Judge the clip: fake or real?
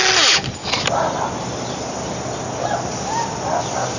real